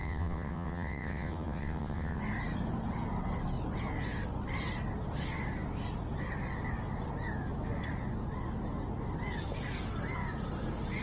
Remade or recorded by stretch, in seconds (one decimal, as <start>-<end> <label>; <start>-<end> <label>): 0.0-2.2 remade; 2.2-11.0 recorded